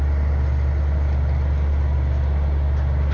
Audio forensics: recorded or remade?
recorded